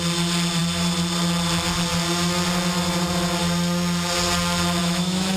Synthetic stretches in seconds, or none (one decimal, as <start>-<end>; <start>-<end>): 4.8-5.4